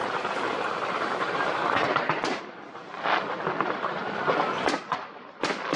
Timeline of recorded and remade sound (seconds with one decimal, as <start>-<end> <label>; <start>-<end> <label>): 0.0-2.4 remade; 2.4-5.8 recorded